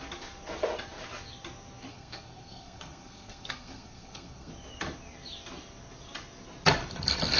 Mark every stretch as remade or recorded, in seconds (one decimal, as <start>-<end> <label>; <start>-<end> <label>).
0.0-1.9 recorded; 1.9-4.5 remade; 4.5-7.4 recorded

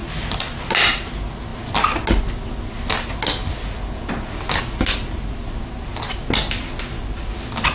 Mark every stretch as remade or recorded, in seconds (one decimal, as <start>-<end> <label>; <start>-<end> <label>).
0.0-7.7 recorded

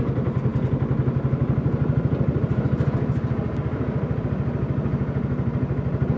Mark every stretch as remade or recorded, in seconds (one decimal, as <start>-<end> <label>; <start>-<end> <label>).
0.0-6.2 recorded

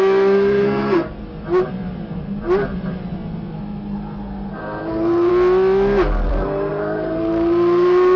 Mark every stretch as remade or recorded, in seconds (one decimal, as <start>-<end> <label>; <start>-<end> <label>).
0.0-1.2 remade; 1.2-4.5 recorded; 4.5-5.3 remade; 5.3-6.3 recorded; 6.3-8.2 remade

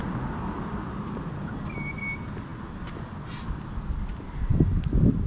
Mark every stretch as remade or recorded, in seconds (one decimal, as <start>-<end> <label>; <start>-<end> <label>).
0.0-5.3 recorded

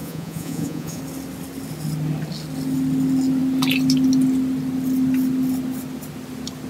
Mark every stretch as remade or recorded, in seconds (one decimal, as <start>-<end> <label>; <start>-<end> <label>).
0.0-1.0 remade; 1.0-6.7 recorded

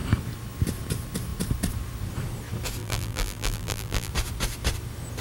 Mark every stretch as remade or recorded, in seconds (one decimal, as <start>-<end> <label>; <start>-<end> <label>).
0.0-2.8 recorded; 2.8-4.1 remade; 4.1-5.2 recorded

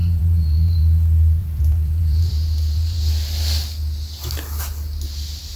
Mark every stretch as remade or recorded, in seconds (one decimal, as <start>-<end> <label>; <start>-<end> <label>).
0.0-0.8 remade; 0.8-1.4 recorded; 1.4-3.0 remade; 3.0-5.6 recorded